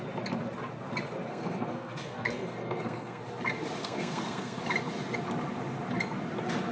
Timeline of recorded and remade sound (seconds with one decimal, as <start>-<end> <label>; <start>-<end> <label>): 0.0-1.3 recorded; 1.3-3.2 remade; 3.2-3.8 recorded; 3.8-4.6 remade; 4.6-6.7 recorded